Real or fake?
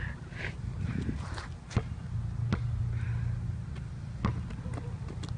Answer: real